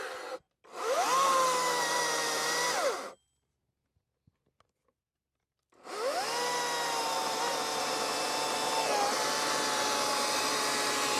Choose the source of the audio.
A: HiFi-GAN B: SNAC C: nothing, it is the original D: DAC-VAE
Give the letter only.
C